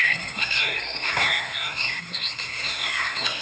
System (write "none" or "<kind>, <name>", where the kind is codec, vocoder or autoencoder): codec, SNAC